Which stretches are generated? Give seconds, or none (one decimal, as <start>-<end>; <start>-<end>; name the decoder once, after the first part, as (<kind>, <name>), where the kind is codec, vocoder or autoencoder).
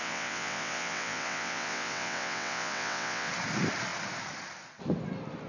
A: 0.0-3.3 (vocoder, WaveNeXt)